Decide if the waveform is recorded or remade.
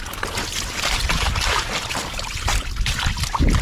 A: recorded